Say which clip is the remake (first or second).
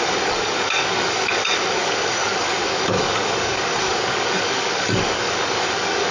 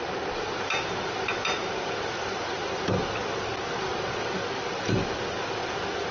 first